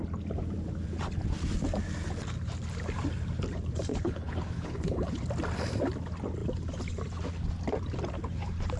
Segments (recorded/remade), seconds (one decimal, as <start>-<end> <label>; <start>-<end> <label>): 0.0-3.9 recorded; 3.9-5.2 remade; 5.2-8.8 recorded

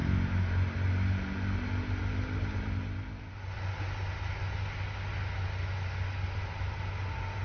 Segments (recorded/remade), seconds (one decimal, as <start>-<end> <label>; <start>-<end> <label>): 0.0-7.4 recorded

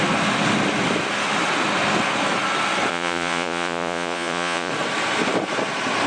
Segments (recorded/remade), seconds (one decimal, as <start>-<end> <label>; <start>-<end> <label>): 0.0-2.9 recorded; 2.9-4.7 remade; 4.7-6.1 recorded

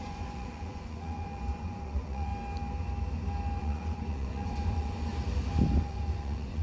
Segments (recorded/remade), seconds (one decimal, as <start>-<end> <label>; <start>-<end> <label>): 0.0-2.3 remade; 2.3-3.6 recorded; 3.6-5.1 remade; 5.1-5.8 recorded; 5.8-6.6 remade

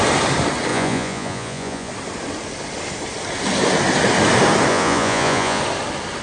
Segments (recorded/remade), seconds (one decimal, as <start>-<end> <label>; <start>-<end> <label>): 0.0-0.7 recorded; 0.7-1.9 remade; 1.9-4.7 recorded; 4.7-5.6 remade; 5.6-6.2 recorded

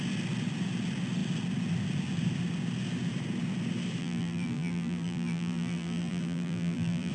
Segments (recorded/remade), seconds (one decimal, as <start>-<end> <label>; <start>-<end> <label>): 0.0-4.0 recorded; 4.0-7.1 remade